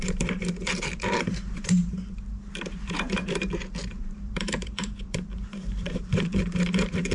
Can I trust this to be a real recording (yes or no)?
no